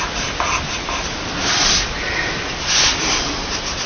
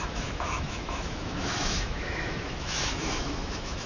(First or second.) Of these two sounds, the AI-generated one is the second